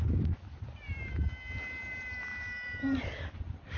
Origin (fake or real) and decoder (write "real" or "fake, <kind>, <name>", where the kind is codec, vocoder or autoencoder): real